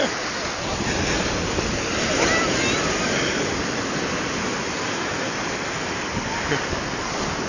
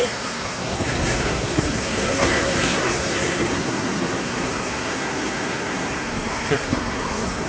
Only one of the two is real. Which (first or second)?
first